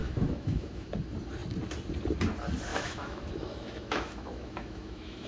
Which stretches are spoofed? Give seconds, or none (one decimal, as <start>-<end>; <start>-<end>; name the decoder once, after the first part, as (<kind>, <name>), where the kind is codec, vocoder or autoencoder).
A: 0.0-0.9 (autoencoder, DAC-VAE); 2.7-5.3